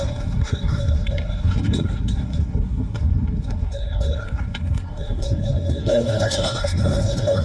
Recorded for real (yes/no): no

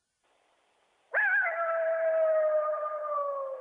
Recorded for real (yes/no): yes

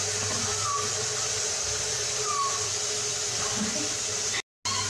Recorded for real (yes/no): yes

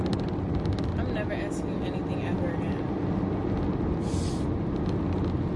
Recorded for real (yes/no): yes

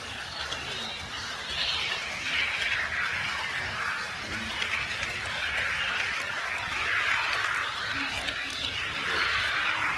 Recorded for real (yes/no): yes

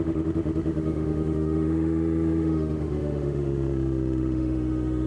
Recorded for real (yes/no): no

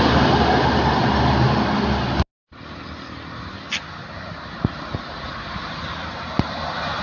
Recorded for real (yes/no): yes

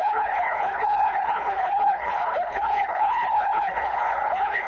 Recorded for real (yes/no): no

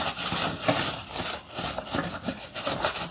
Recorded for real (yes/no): yes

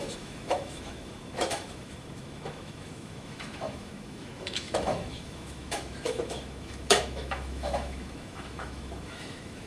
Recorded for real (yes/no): no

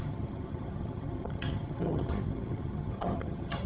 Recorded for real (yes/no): no